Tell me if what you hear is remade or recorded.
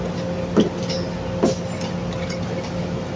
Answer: recorded